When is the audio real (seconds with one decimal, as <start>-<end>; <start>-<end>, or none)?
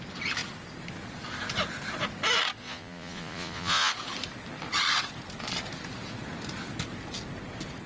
0.0-2.6; 3.9-7.9